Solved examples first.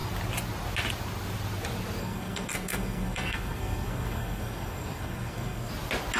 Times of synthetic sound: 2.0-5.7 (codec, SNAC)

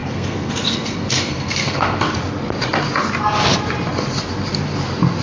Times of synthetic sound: 0.0-2.0 (codec, SNAC)

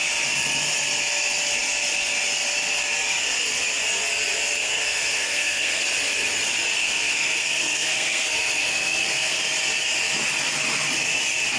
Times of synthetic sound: 4.6-5.8 (codec, SNAC); 6.8-9.4

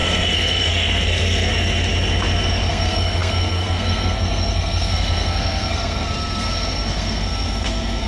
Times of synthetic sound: 0.0-1.5 (codec, SNAC); 2.7-8.1

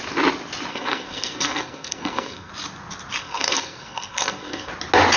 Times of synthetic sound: 0.7-2.5 (codec, SNAC); 3.2-4.7

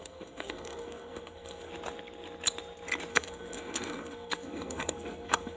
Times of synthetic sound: 0.0-1.7 (codec, SNAC); 3.1-5.6

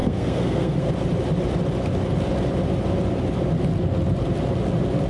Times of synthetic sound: 0.0-0.9 (codec, SNAC)

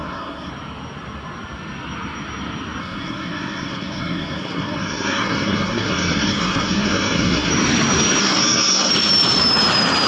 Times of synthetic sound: 0.0-0.5 (codec, SNAC); 2.8-7.5; 8.2-8.9